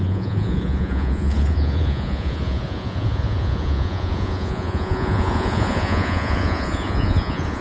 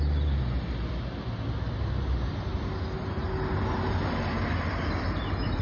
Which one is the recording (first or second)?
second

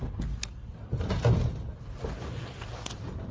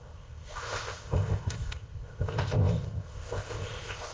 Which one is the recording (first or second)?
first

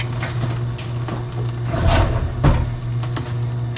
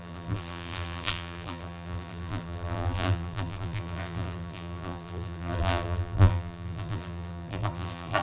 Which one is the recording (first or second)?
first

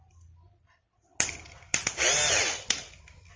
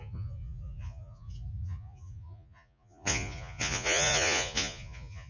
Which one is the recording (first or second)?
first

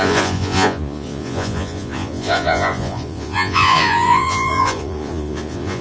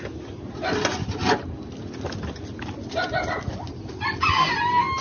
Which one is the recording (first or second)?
second